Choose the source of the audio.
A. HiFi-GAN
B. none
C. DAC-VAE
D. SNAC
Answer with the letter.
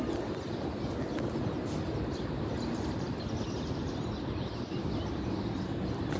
B